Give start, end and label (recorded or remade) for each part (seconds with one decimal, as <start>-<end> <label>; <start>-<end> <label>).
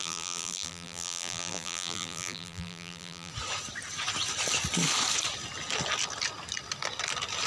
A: 0.0-3.3 remade; 3.3-7.5 recorded